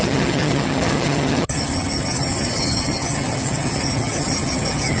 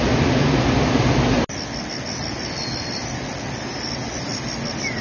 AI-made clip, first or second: first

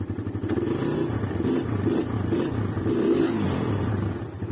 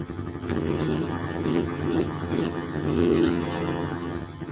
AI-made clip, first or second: second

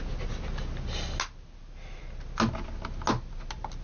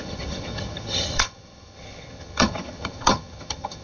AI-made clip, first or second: second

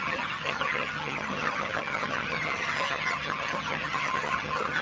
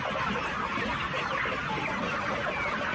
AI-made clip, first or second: first